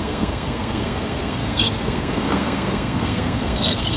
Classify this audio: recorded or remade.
remade